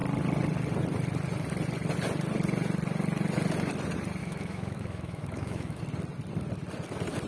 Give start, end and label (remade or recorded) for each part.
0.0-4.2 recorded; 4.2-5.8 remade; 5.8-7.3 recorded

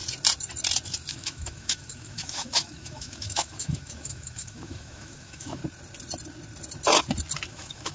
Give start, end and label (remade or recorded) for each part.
0.0-1.1 recorded; 1.1-5.6 remade; 5.6-7.5 recorded; 7.5-7.9 remade